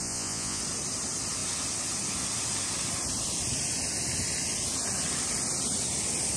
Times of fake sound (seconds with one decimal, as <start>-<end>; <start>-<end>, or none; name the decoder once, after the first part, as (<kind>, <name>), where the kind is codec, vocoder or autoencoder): 0.0-0.6 (vocoder, Vocos)